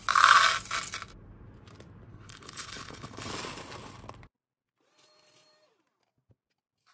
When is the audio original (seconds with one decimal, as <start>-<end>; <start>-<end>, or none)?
0.0-2.1; 3.3-6.9